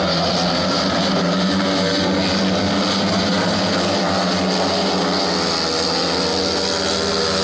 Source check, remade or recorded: recorded